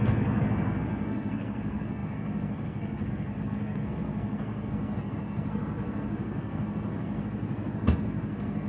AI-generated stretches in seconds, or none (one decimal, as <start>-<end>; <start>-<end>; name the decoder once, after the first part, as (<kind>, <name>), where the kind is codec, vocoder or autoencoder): 0.0-8.7 (codec, SNAC)